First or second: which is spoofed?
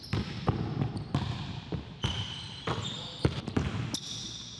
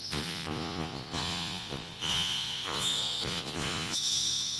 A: second